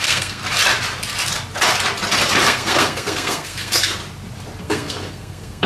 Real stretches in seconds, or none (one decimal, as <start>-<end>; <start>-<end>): 0.4-2.4; 4.0-4.6